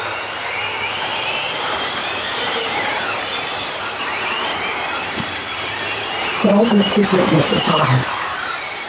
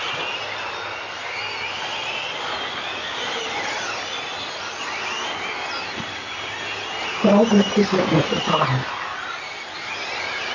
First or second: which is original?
second